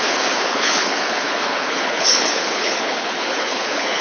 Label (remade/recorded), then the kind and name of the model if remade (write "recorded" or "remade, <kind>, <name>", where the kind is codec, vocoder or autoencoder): remade, codec, HILCodec